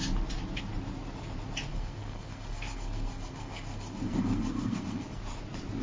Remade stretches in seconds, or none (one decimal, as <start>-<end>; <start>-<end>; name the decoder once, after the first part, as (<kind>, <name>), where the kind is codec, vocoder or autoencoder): 1.7-5.2 (codec, SNAC)